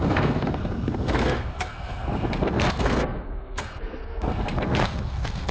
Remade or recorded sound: remade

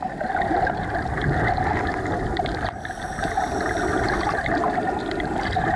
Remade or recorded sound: recorded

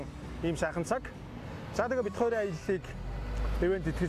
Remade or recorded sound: recorded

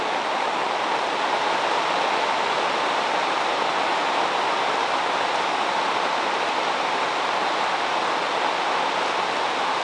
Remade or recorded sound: recorded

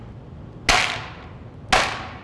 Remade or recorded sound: recorded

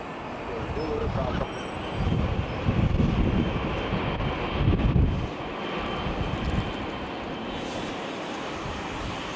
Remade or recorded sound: recorded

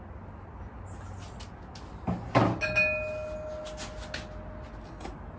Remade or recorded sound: recorded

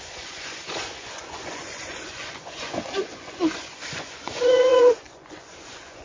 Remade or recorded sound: remade